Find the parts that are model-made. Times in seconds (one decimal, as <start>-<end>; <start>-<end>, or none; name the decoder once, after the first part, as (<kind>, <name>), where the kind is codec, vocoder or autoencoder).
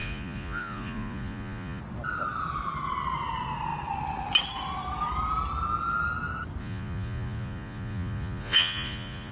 0.0-1.8 (vocoder, Vocos); 6.6-9.3